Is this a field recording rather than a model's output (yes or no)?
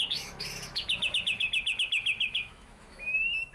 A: no